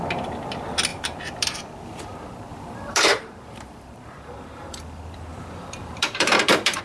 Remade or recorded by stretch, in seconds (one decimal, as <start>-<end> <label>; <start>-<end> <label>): 0.0-0.9 recorded; 0.9-1.6 remade; 1.6-2.5 recorded; 2.5-4.8 remade; 4.8-5.3 recorded; 5.3-6.8 remade